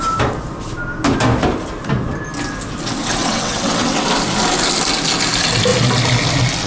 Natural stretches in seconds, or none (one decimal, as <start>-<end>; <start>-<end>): 0.0-3.2; 4.1-6.7